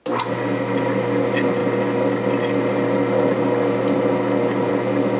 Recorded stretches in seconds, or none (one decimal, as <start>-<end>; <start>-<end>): 0.0-5.2